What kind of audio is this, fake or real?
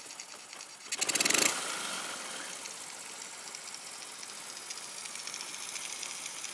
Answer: real